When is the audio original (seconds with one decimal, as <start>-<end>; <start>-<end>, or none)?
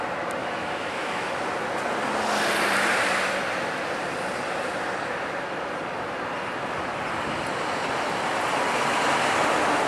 0.0-0.4; 1.3-9.9